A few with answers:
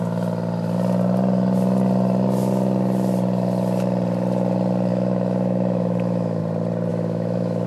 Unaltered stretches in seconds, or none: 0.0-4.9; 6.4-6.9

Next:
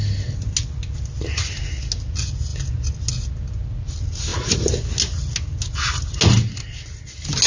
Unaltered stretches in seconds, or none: 0.0-7.5

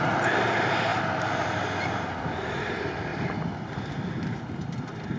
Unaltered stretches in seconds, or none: 0.0-5.2